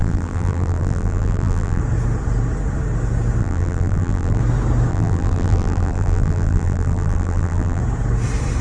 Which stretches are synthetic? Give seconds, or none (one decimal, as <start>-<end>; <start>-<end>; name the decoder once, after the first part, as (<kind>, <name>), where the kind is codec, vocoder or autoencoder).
0.0-1.8 (vocoder, BigVGAN v2); 3.4-4.4; 4.9-7.8

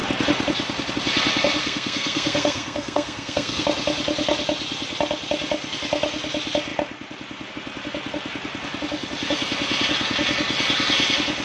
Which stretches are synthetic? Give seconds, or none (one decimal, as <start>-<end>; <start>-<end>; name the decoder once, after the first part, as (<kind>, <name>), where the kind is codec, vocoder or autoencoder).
1.6-3.6 (codec, SNAC)

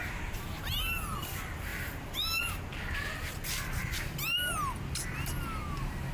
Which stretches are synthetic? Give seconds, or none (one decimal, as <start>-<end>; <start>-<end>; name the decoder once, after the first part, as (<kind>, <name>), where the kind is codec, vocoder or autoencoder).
0.0-0.8 (vocoder, BigVGAN v2); 1.7-2.6; 3.8-4.8

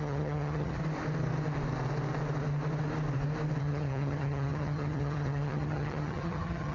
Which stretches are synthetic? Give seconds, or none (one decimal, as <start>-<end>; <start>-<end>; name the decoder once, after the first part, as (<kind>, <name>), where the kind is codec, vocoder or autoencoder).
0.0-0.8 (vocoder, HiFi-GAN); 3.6-6.7